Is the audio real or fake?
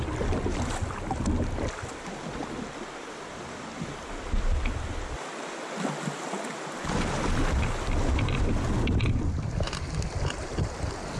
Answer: real